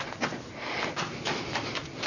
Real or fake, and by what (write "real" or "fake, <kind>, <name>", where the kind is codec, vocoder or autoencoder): real